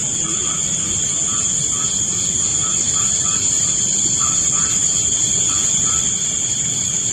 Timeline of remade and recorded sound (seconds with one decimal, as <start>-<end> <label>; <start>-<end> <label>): 0.0-2.5 recorded; 2.5-3.1 remade; 3.1-7.1 recorded